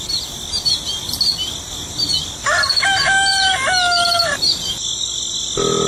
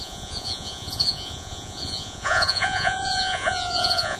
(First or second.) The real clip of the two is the first